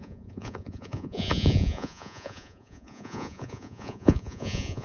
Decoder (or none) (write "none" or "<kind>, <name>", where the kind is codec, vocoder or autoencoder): vocoder, Vocos